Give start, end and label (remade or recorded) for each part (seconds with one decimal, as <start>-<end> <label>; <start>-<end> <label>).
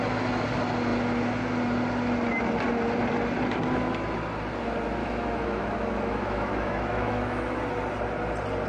0.0-5.0 recorded; 5.0-7.6 remade; 7.6-8.7 recorded